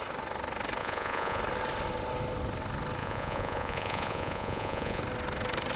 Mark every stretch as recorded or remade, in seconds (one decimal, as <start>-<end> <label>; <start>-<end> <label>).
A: 0.0-0.8 recorded; 0.8-1.4 remade; 1.4-3.0 recorded; 3.0-5.0 remade; 5.0-5.8 recorded